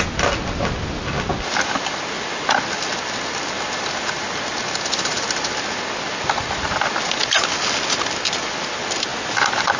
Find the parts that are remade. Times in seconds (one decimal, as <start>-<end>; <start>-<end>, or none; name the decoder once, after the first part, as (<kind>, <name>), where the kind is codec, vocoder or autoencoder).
none